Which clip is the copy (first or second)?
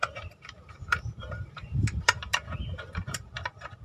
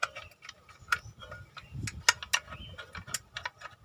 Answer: first